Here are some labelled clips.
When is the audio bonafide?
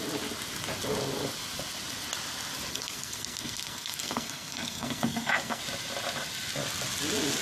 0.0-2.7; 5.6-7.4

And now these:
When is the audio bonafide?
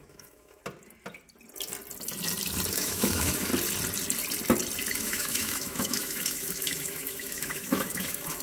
0.6-2.7; 3.5-4.9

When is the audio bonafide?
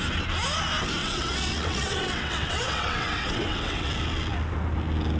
0.0-1.0; 3.9-5.2